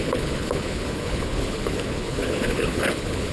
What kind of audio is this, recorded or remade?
remade